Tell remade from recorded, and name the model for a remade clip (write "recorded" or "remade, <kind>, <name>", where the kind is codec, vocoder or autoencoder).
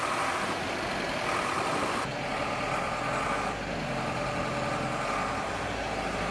recorded